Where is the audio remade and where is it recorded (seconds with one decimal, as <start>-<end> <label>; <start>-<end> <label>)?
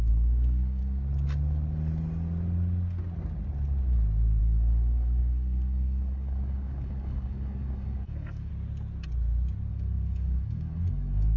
0.0-0.8 remade; 0.8-4.4 recorded; 4.4-8.5 remade; 8.5-9.7 recorded; 9.7-11.4 remade